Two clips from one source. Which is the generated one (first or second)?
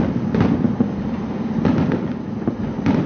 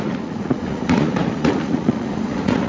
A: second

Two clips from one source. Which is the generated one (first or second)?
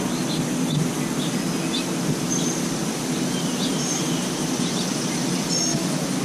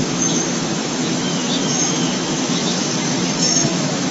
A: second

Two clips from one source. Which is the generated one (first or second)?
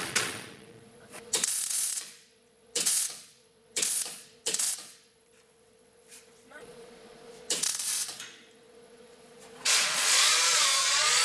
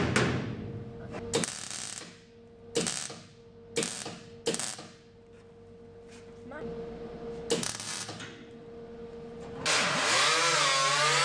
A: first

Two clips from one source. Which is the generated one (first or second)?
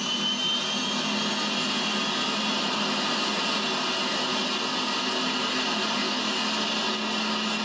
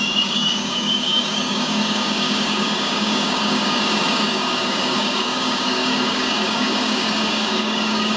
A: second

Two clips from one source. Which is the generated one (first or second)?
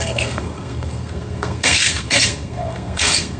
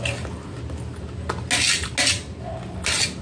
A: first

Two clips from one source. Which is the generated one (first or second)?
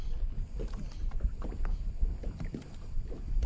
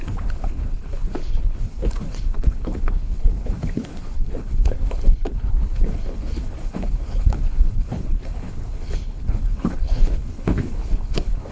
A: second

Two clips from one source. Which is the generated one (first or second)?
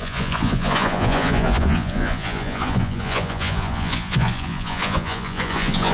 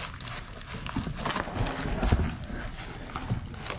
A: first